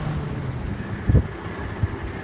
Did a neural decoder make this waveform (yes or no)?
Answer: no